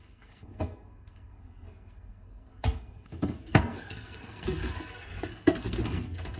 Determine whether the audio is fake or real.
fake